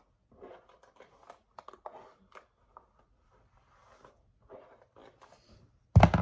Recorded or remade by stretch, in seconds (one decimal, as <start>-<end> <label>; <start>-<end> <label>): 0.0-6.2 recorded